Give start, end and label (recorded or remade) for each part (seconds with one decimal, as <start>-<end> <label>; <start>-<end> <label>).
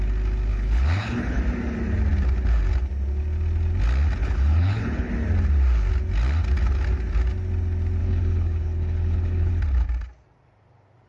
0.0-0.5 recorded; 0.5-1.4 remade; 1.4-4.2 recorded; 4.2-5.1 remade; 5.1-8.0 recorded; 8.0-9.5 remade; 9.5-11.1 recorded